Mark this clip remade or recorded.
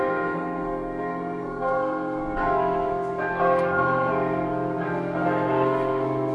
remade